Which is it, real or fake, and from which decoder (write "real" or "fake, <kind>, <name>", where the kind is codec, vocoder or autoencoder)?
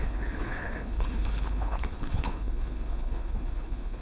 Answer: fake, codec, HILCodec